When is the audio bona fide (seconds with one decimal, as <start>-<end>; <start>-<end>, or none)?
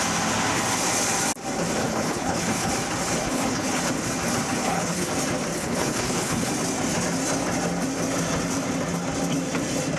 0.0-1.8; 2.7-3.2; 3.8-4.6; 5.1-5.5; 6.5-10.0